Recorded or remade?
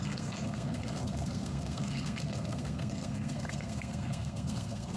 remade